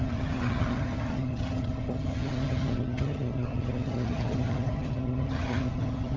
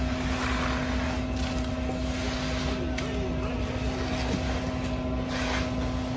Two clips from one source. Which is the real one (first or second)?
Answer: second